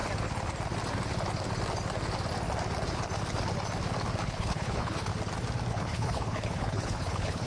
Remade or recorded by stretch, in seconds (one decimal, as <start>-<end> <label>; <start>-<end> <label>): 0.0-4.2 recorded; 4.2-5.1 remade; 5.1-5.7 recorded; 5.7-7.5 remade